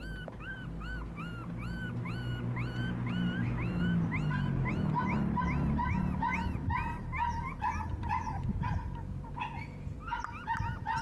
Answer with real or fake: real